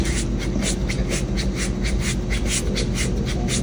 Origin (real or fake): real